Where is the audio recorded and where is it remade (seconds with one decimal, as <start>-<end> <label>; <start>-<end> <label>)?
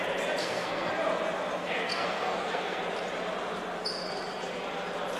0.0-0.4 recorded; 0.4-0.9 remade; 0.9-1.6 recorded; 1.6-2.8 remade; 2.8-5.2 recorded